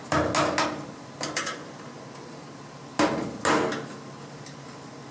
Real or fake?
real